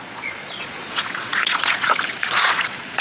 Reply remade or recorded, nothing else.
remade